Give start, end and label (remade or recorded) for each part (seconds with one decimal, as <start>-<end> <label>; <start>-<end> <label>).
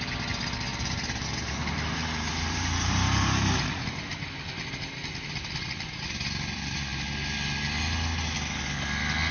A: 0.0-0.7 recorded; 0.7-4.3 remade; 4.3-9.3 recorded